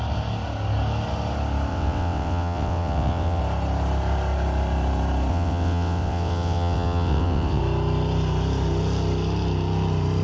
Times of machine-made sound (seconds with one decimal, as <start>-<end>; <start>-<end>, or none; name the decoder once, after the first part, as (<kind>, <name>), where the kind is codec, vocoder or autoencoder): 1.7-3.4 (vocoder, WaveNeXt); 5.3-7.6

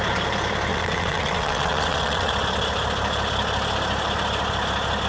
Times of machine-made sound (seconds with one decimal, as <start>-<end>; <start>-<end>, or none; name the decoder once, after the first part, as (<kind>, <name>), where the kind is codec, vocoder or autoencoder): 0.7-2.3 (vocoder, WaveNeXt)

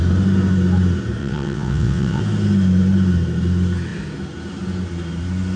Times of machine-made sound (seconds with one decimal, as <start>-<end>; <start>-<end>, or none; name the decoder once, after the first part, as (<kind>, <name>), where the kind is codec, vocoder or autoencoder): 1.2-2.2 (vocoder, WaveNeXt)

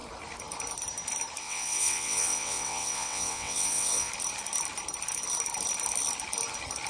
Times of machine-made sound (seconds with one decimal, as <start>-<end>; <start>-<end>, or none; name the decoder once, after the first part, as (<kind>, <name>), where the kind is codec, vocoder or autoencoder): 1.4-4.1 (vocoder, WaveNeXt)

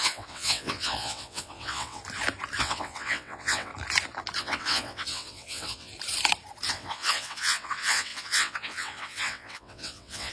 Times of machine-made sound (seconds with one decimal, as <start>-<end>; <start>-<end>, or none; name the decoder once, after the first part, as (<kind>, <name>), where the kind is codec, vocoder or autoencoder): 0.0-2.0 (vocoder, WaveNeXt); 2.6-3.7; 4.4-5.9; 6.7-10.3

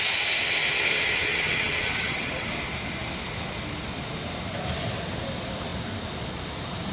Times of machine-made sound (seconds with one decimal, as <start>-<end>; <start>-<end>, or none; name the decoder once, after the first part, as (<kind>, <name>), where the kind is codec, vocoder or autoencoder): 1.3-2.5 (vocoder, WaveNeXt)

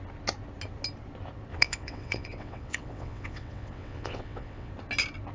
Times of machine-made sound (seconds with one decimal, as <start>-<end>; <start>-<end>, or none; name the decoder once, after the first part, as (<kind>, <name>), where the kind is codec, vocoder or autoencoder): 1.5-4.7 (vocoder, WaveNeXt)